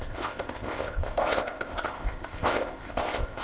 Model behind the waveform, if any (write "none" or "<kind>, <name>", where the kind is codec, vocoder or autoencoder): codec, ZipCodec